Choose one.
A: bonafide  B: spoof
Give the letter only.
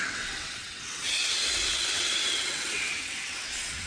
B